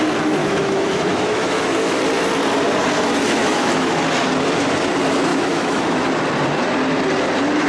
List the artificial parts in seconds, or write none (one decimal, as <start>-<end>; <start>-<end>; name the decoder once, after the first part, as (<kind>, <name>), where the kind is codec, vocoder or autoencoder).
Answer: 0.4-2.0 (autoencoder, DAC-VAE); 3.4-4.0; 5.3-6.1